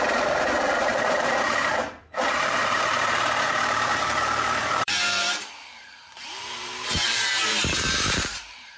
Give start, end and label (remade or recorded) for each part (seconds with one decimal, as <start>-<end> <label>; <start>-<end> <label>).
0.0-8.8 remade